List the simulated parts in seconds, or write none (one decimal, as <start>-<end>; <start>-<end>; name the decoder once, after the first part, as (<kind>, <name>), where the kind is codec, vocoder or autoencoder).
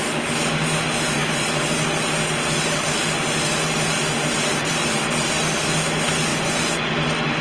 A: 6.3-6.9 (vocoder, Vocos)